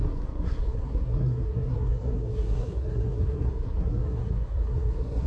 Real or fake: fake